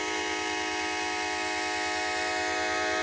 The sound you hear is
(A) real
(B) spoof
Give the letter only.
A